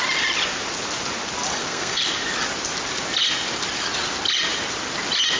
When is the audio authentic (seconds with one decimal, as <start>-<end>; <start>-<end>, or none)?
0.0-1.5; 2.0-5.4